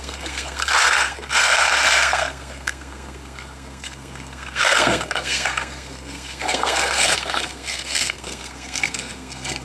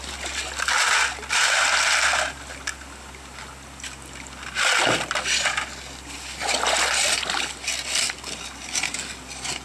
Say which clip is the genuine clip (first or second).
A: second